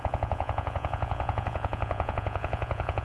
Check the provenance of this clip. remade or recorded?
remade